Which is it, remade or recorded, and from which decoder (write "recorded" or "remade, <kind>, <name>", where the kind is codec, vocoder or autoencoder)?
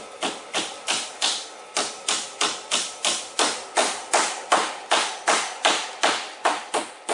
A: recorded